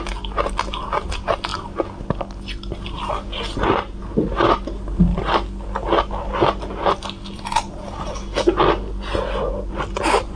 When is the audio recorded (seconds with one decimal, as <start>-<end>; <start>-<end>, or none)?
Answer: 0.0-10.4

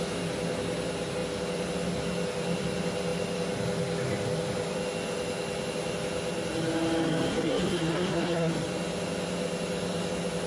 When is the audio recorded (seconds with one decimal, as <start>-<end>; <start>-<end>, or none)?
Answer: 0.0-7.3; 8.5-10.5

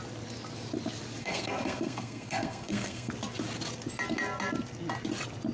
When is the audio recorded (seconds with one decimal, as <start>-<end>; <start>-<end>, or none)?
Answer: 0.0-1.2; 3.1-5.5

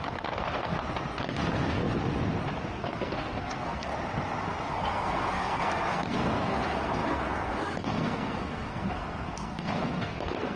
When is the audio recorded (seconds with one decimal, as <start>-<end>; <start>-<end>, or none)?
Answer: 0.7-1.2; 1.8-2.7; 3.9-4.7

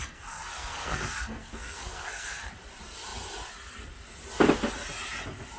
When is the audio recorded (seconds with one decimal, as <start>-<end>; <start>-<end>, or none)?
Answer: 2.5-5.6